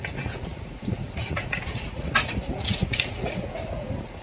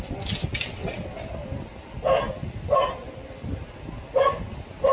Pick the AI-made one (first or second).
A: first